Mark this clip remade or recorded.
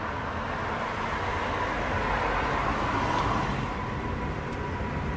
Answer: recorded